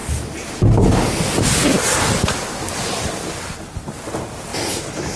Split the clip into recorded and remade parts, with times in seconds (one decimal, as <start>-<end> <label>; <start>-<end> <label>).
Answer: 0.0-5.2 recorded